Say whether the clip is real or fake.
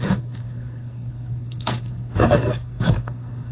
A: fake